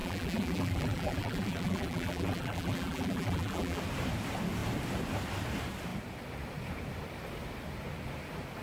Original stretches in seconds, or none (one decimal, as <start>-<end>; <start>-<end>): 3.8-8.6